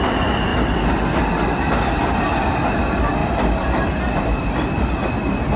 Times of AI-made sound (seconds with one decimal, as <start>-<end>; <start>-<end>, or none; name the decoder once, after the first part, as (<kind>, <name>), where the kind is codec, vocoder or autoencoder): 0.5-1.2 (vocoder, BigVGAN v2); 3.2-3.9